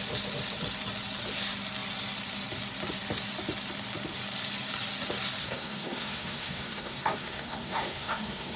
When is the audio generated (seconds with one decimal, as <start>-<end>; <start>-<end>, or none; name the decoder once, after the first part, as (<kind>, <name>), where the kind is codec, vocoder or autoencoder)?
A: 5.4-8.6 (codec, SNAC)